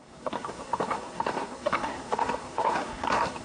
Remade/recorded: remade